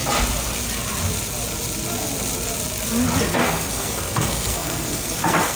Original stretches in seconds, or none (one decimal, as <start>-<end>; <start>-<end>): 0.0-3.2